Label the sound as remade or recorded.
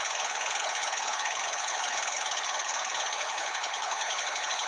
remade